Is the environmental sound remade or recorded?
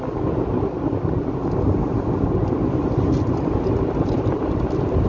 recorded